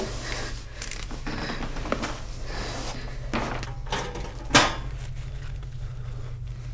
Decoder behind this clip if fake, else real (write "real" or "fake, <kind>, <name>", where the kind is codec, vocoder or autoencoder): real